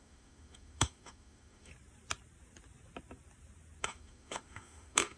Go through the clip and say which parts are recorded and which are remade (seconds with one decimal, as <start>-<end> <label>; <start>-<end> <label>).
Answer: 0.0-1.7 remade; 1.7-3.8 recorded; 3.8-5.2 remade